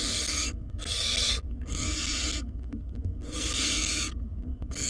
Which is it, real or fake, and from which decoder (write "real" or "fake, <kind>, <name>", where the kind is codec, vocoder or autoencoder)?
fake, codec, SNAC